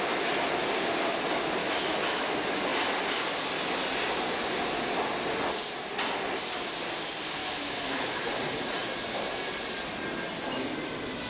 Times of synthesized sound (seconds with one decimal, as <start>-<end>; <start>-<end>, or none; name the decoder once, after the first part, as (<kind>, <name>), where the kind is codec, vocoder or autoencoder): 1.6-2.3 (autoencoder, DAC-VAE); 7.4-8.3